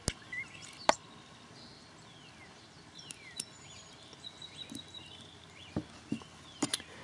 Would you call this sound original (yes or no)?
yes